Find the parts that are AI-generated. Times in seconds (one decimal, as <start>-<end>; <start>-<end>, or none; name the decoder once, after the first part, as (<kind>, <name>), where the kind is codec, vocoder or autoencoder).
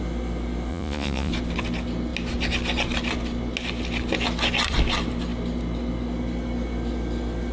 0.7-1.3 (vocoder, Vocos)